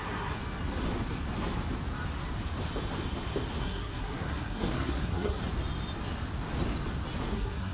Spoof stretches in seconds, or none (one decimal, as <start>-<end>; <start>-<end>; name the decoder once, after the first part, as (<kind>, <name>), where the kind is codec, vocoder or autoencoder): 0.0-0.4 (codec, SNAC); 3.6-5.4; 7.3-7.7